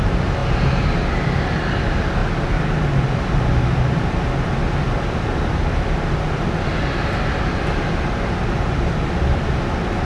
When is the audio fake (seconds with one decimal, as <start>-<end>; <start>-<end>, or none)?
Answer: none